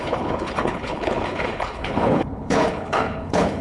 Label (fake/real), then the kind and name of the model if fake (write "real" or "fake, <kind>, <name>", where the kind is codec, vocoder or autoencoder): fake, codec, HILCodec